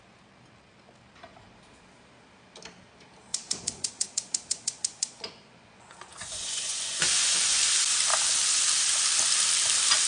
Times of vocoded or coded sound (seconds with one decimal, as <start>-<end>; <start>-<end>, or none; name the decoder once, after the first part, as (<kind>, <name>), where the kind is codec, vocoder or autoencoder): 3.3-7.6 (vocoder, Vocos)